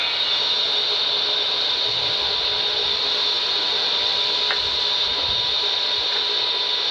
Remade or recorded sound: recorded